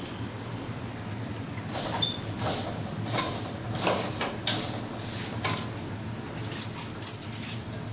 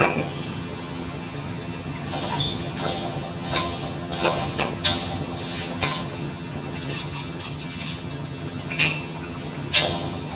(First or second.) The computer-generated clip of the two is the second